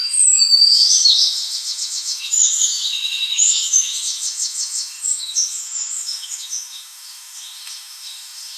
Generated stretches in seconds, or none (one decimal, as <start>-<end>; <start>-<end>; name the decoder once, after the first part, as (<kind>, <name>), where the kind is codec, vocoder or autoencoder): 0.0-8.6 (autoencoder, DAC-VAE)